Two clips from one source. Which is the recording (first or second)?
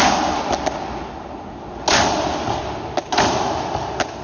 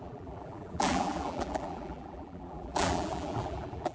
first